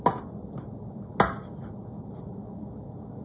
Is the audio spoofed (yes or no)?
no